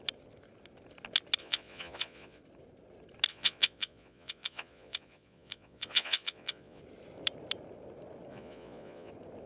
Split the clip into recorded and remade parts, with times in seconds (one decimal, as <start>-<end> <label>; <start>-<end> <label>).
0.0-1.4 recorded; 1.4-2.4 remade; 2.4-3.3 recorded; 3.3-6.8 remade; 6.8-8.3 recorded; 8.3-9.1 remade; 9.1-9.5 recorded